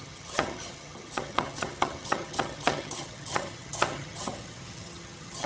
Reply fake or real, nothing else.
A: fake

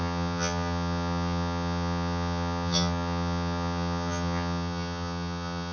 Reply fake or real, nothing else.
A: fake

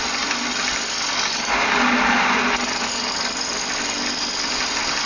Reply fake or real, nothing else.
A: real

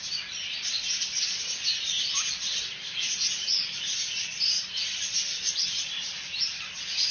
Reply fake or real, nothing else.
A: real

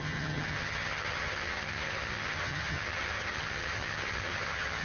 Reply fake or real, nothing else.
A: fake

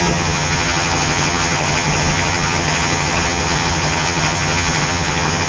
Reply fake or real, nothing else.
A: fake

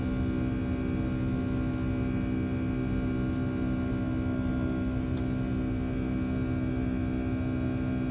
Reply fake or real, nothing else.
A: real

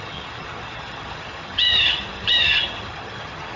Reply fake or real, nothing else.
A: fake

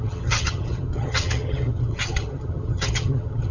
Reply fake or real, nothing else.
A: fake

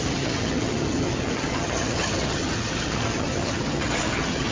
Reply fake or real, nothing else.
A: fake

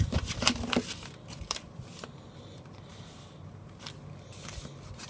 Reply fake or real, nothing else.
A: real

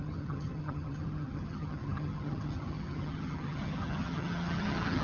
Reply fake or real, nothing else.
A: fake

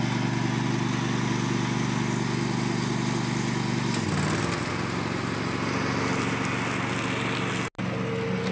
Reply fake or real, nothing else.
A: real